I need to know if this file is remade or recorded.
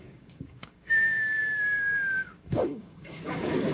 remade